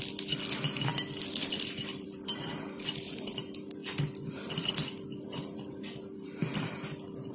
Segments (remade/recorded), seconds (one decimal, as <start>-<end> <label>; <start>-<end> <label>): 0.0-1.9 recorded; 1.9-2.9 remade; 2.9-7.3 recorded